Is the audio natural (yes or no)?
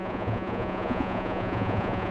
no